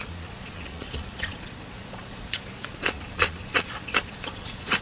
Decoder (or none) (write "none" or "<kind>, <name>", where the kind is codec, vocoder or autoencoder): vocoder, Vocos